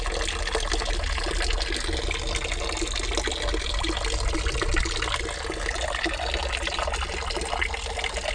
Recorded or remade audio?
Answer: recorded